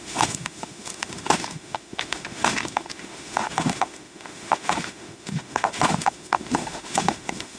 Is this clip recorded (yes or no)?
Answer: no